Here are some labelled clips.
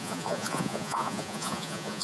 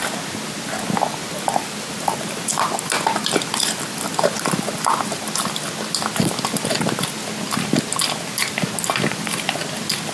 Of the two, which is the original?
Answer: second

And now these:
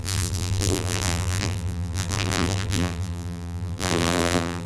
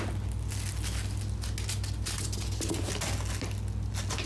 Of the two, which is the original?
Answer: second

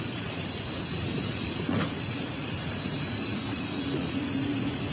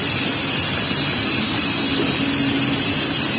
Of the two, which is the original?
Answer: second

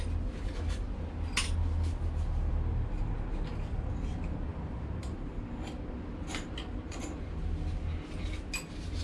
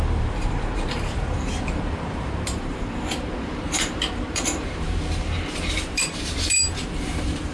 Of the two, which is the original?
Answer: first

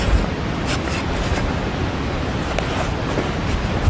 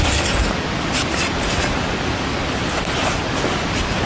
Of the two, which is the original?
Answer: first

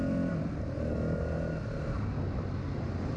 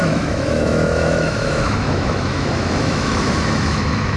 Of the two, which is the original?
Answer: first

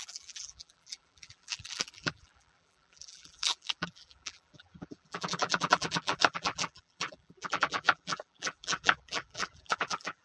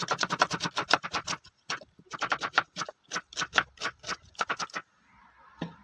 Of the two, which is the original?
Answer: second